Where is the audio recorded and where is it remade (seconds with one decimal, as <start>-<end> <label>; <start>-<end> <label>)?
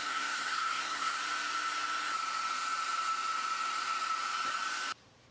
0.0-1.2 remade; 1.2-5.3 recorded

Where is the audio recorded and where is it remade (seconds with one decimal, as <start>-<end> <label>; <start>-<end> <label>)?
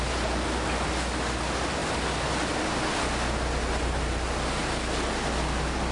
0.0-5.9 recorded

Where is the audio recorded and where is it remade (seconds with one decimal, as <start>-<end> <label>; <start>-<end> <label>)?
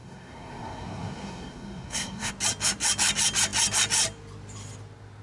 0.0-2.3 remade; 2.3-5.2 recorded